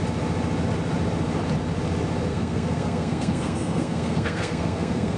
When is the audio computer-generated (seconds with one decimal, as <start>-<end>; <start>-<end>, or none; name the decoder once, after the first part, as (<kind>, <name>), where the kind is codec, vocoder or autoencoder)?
2.3-5.2 (codec, SNAC)